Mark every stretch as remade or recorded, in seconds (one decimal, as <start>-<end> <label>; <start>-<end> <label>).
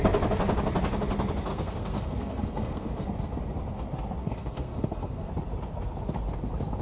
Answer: 0.0-1.5 recorded; 1.5-2.9 remade; 2.9-4.2 recorded; 4.2-5.3 remade; 5.3-6.8 recorded